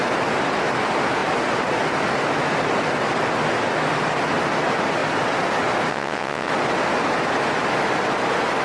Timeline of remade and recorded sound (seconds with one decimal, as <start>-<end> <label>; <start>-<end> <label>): 0.0-5.9 recorded; 5.9-6.5 remade; 6.5-8.6 recorded